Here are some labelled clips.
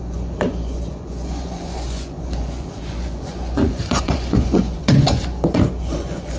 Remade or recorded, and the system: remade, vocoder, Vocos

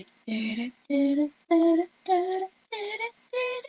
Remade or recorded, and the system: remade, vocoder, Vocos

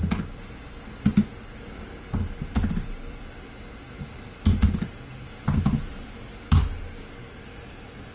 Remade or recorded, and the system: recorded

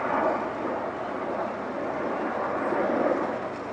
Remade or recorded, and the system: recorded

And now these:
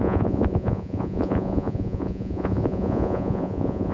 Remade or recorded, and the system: remade, vocoder, Vocos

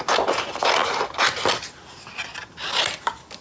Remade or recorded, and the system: recorded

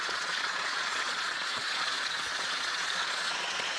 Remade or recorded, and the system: remade, vocoder, Vocos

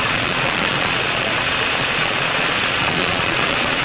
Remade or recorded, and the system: remade, vocoder, Vocos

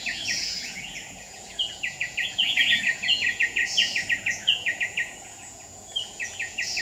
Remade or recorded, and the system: remade, vocoder, Vocos